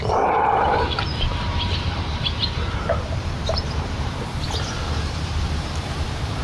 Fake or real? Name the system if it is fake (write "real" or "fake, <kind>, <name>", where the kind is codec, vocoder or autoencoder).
fake, vocoder, BigVGAN v2